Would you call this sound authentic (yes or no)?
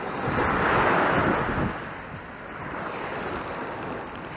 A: yes